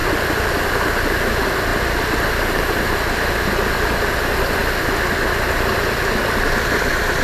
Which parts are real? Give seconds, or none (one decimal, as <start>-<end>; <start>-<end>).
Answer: 0.7-1.7; 4.1-7.2